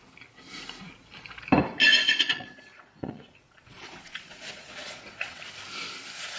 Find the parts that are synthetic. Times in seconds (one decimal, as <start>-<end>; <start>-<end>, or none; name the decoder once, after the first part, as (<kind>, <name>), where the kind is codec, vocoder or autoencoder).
1.8-5.4 (vocoder, Vocos)